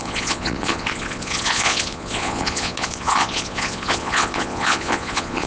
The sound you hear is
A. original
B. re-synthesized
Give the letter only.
B